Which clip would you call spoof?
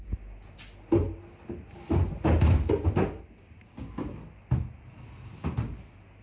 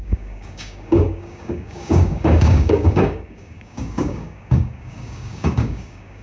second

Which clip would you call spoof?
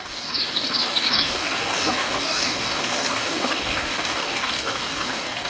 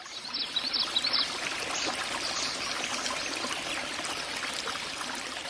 first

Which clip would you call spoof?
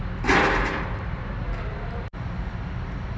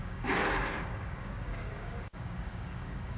second